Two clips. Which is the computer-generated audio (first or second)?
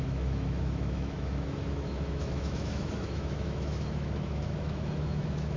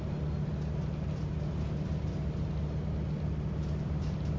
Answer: first